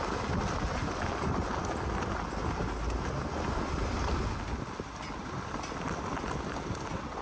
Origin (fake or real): real